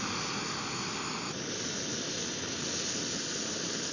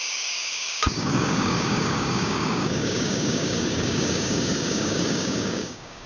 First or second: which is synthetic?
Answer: second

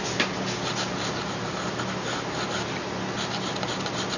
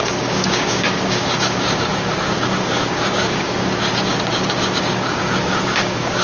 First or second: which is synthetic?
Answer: second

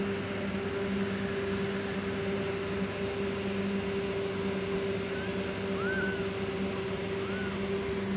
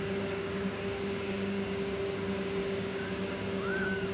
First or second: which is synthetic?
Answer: second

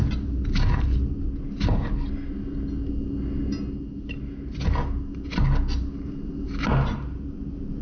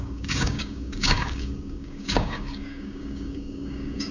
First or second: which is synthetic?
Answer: second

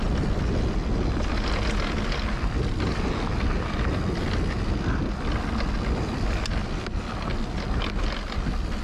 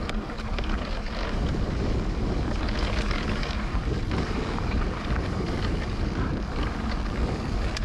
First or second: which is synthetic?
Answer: second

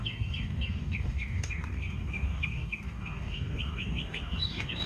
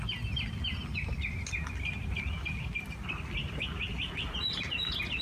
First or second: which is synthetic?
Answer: first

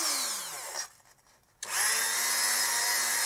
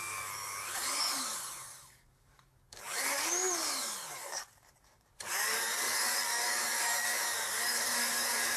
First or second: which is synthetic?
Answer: second